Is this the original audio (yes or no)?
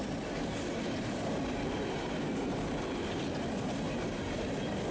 yes